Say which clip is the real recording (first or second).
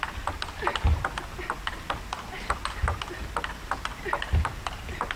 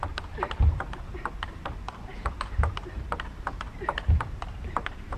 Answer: first